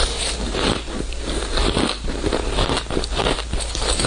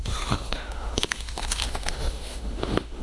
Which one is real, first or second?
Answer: first